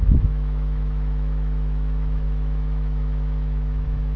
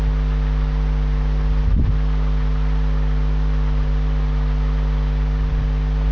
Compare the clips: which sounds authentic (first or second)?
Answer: second